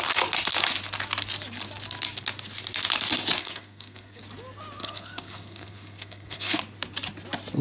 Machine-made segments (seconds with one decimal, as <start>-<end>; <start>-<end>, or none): 3.4-4.2; 4.8-6.6